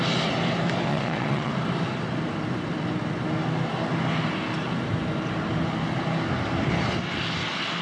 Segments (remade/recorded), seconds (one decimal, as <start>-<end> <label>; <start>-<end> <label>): 0.0-0.9 recorded; 0.9-1.5 remade; 1.5-7.8 recorded